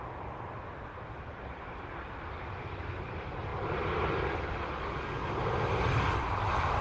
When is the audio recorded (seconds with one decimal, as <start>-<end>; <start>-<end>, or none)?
0.0-6.8